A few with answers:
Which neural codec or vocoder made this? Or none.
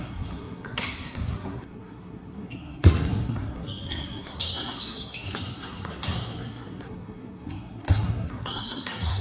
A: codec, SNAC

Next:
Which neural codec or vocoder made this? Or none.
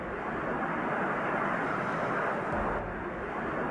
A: none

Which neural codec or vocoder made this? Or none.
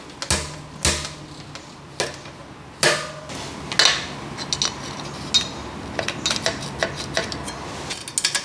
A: none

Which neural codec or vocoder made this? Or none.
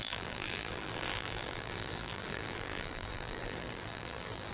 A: vocoder, BigVGAN v2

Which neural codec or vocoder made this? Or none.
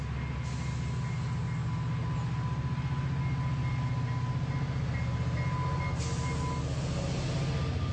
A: none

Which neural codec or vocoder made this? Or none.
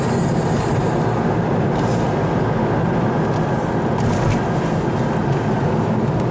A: none